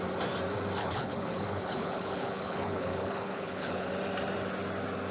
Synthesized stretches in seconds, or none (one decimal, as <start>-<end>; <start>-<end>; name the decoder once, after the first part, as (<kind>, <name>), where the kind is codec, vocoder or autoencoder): 0.8-3.9 (codec, HILCodec)